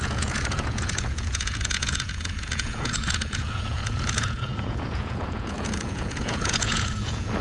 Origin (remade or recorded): remade